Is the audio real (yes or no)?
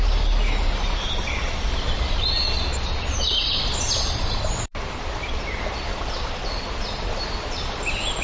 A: yes